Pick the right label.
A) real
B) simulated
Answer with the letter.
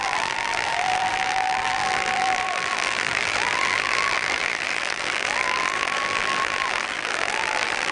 B